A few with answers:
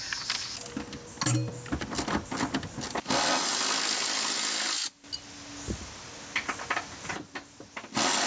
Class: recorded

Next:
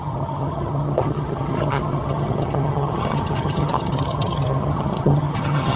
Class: remade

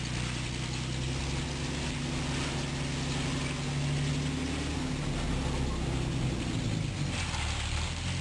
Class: recorded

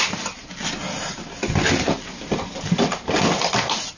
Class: recorded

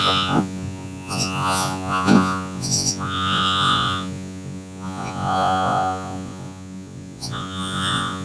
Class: remade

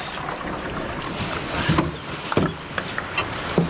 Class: recorded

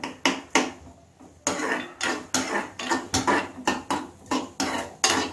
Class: recorded